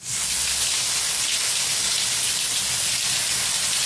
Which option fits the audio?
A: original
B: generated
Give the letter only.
A